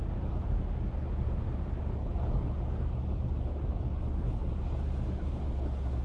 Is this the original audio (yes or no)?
yes